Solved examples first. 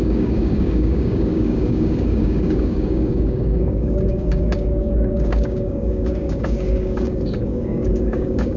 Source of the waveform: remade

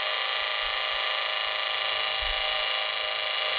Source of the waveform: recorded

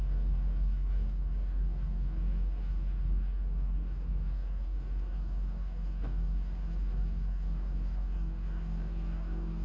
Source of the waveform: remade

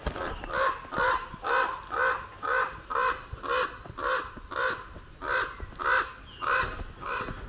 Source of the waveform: recorded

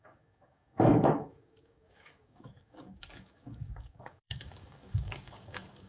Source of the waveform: remade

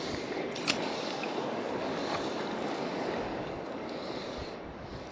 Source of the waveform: remade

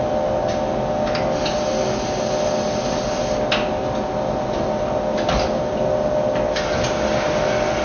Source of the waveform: recorded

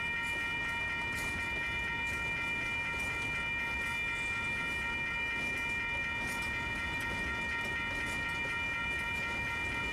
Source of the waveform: recorded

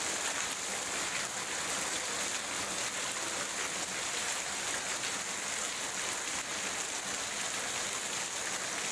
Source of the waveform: recorded